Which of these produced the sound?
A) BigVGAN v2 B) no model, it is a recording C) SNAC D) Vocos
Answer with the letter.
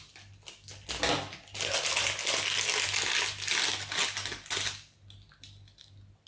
B